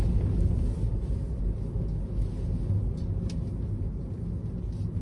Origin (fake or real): real